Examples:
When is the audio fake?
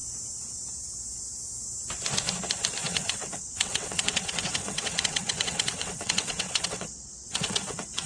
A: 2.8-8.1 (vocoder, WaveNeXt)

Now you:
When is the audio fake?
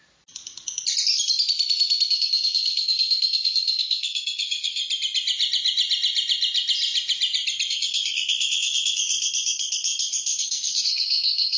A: 2.1-4.8 (codec, SNAC); 7.7-11.6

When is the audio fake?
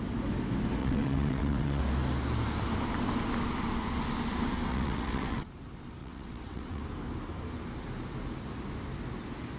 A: 0.8-1.8 (vocoder, WaveNeXt); 4.7-5.5; 6.0-6.8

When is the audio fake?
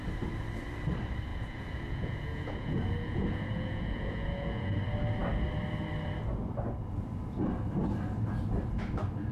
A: 1.3-4.8 (vocoder, Vocos)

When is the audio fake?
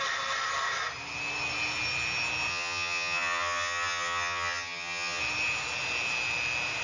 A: 2.5-5.2 (vocoder, HiFi-GAN)